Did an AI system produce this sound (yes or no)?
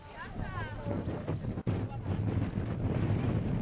no